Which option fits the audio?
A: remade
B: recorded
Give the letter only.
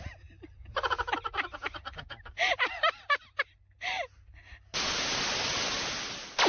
B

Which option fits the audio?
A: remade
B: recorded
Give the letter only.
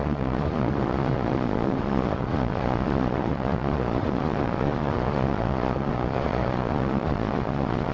A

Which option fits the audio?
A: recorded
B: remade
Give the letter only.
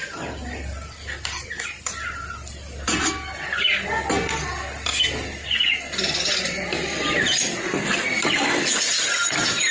A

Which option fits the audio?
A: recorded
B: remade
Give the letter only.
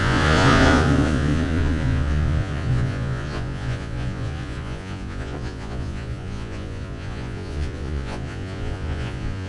B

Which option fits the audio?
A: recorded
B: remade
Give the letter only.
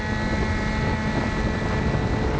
A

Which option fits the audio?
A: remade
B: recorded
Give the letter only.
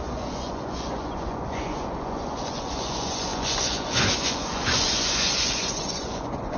A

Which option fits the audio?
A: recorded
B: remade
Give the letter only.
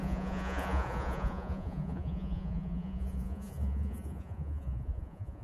B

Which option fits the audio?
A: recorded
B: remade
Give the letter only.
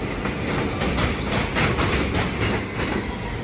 A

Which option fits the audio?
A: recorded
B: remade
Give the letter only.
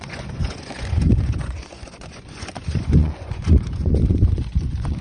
B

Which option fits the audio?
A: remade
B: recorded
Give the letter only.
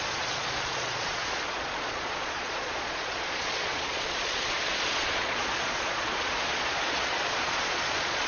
A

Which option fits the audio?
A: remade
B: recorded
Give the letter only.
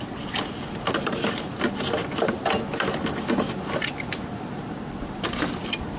B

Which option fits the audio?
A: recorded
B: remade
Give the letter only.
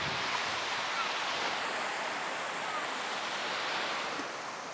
A